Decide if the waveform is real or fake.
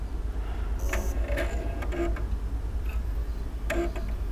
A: real